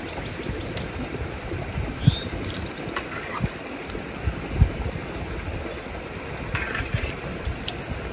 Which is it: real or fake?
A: real